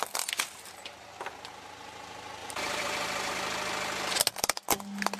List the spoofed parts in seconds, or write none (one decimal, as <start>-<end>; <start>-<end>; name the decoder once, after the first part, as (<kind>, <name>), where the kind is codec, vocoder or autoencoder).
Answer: 2.4-3.3 (vocoder, BigVGAN v2)